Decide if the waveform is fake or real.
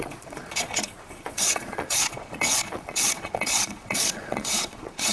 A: fake